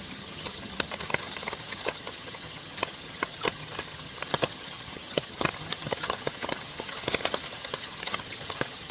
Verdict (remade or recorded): remade